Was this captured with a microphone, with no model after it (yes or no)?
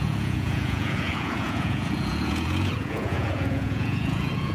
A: no